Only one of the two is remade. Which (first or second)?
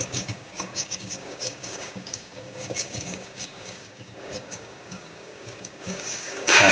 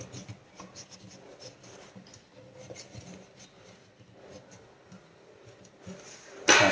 first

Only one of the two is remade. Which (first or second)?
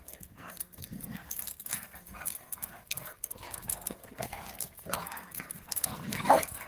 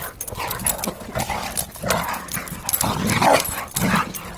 first